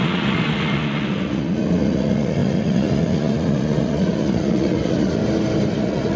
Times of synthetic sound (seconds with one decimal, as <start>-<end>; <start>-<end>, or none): 0.0-5.2; 5.7-6.2